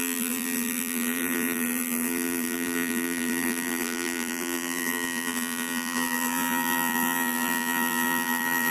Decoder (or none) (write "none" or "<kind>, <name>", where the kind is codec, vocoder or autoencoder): vocoder, BigVGAN v2